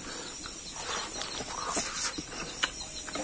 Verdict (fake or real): real